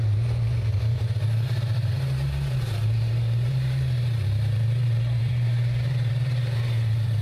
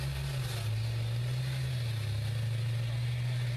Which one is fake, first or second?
first